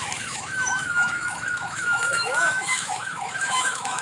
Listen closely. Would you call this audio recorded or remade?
remade